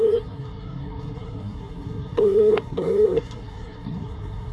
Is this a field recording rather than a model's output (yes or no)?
no